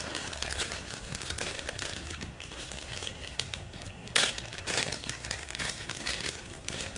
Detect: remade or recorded remade